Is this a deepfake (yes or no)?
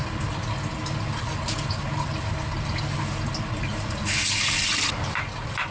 no